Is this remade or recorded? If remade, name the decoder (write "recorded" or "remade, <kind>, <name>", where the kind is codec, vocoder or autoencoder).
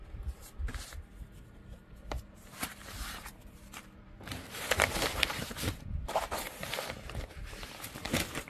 remade, vocoder, BigVGAN v2